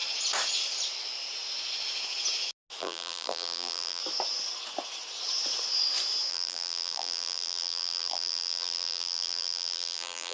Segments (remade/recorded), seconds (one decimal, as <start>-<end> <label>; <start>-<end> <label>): 0.0-2.8 recorded; 2.8-4.0 remade; 4.0-6.3 recorded; 6.3-10.3 remade